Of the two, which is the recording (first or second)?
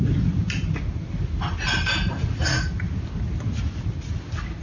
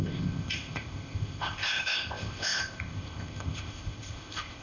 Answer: first